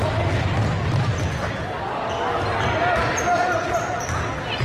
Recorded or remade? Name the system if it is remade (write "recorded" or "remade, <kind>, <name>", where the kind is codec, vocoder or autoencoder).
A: recorded